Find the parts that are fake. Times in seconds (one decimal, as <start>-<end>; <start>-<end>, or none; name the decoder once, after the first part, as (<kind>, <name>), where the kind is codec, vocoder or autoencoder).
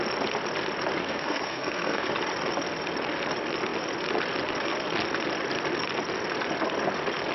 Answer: 1.0-2.1 (codec, SNAC)